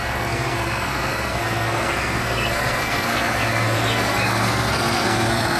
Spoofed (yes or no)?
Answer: yes